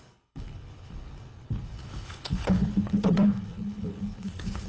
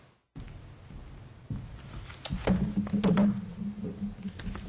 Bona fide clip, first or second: second